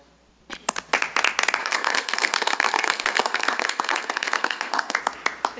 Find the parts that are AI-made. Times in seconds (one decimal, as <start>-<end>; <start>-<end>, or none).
1.6-5.0